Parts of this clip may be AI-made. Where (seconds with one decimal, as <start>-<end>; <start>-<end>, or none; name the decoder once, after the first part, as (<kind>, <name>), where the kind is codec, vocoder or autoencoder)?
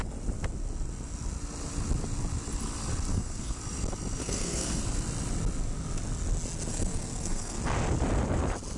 3.1-3.6 (codec, SNAC); 4.2-4.8; 6.7-7.6